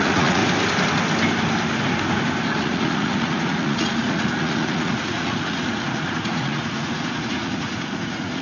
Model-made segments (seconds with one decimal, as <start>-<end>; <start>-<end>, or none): 0.0-0.4; 2.6-8.4